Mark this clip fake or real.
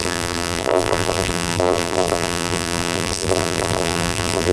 fake